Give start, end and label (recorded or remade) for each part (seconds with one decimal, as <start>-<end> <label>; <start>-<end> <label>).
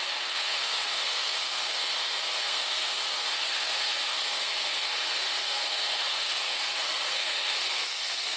0.0-8.4 remade